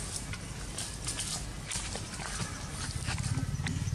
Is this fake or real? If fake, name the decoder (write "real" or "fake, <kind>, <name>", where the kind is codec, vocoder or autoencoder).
real